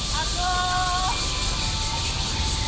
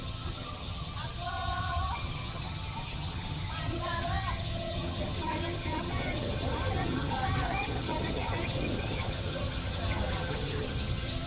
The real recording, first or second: first